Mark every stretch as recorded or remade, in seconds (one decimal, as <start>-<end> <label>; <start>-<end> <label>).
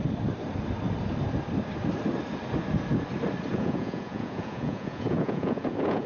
0.0-3.5 recorded; 3.5-6.1 remade